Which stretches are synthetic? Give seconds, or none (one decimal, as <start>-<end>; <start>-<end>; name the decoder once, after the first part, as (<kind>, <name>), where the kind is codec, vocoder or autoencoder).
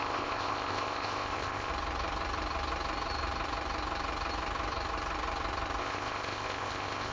0.0-1.7 (codec, ZipCodec); 5.8-7.1